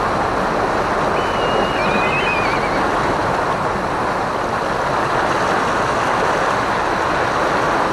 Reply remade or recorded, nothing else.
recorded